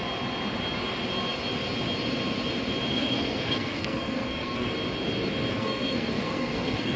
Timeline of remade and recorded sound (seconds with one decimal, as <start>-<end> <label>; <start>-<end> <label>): 0.0-2.9 recorded; 2.9-4.7 remade; 4.7-5.5 recorded; 5.5-7.0 remade